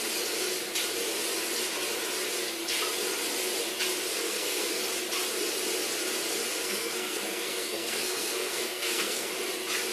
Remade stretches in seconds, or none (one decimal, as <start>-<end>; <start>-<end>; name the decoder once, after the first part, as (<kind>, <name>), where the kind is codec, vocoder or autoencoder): 4.1-4.8 (codec, SNAC); 6.6-9.3